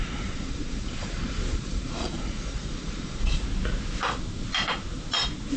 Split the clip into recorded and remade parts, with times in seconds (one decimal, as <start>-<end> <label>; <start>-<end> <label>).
0.0-3.4 remade; 3.4-5.6 recorded

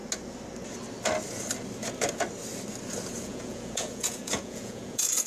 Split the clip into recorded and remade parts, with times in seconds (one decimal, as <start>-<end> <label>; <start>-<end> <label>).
0.0-3.2 recorded; 3.2-5.3 remade

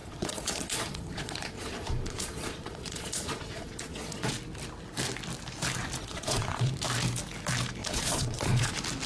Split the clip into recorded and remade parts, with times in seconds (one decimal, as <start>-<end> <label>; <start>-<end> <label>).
0.0-4.3 remade; 4.3-6.0 recorded; 6.0-6.7 remade; 6.7-7.8 recorded; 7.8-8.7 remade; 8.7-9.1 recorded

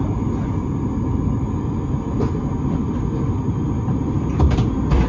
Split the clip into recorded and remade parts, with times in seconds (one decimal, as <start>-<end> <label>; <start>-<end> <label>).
0.0-5.1 recorded

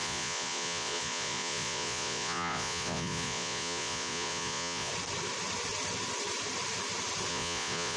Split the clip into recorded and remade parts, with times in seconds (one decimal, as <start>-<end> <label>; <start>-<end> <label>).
0.0-4.9 remade; 4.9-7.3 recorded; 7.3-8.0 remade

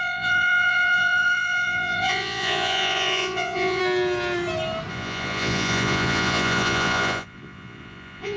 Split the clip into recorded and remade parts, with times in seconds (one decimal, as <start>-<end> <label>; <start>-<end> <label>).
0.0-3.8 remade; 3.8-4.9 recorded; 4.9-8.4 remade